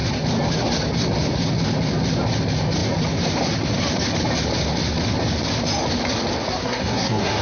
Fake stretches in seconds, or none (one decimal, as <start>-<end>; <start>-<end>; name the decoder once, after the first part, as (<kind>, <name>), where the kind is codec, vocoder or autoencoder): 6.6-7.4 (codec, SNAC)